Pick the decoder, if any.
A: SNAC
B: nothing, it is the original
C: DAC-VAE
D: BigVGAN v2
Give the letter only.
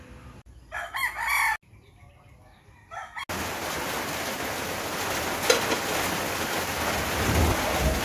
B